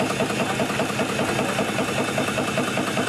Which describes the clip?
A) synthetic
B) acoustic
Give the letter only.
B